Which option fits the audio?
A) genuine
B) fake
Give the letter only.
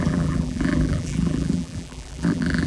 B